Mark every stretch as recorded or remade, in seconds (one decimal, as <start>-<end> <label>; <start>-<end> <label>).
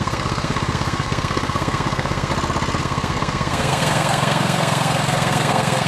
0.0-2.3 remade; 2.3-2.8 recorded; 2.8-5.9 remade